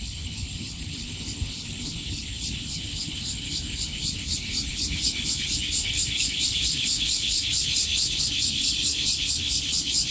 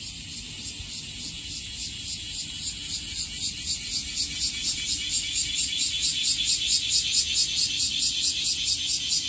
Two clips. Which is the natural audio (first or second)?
second